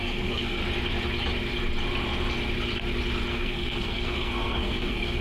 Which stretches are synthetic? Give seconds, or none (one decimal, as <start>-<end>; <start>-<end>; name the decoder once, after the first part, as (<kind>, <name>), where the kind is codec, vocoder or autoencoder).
0.0-0.6 (codec, SNAC); 3.3-5.2